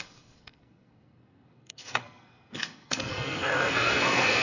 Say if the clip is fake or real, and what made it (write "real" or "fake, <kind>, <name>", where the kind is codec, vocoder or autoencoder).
fake, codec, SNAC